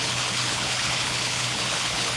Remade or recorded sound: remade